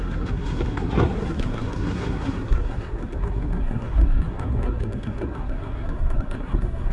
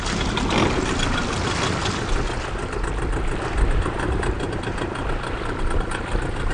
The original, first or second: second